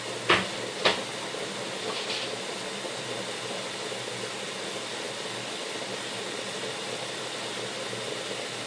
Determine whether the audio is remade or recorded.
recorded